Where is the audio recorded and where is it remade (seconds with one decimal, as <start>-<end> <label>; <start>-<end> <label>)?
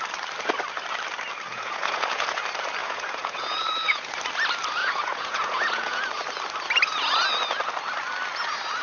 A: 0.0-1.5 recorded; 1.5-2.4 remade; 2.4-2.8 recorded; 2.8-4.2 remade; 4.2-4.8 recorded; 4.8-6.1 remade; 6.1-8.8 recorded